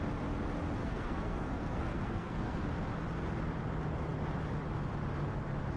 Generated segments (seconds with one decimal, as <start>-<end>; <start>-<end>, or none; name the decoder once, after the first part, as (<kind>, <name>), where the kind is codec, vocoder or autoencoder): 0.8-2.6 (codec, SNAC)